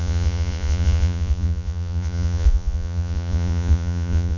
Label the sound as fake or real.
fake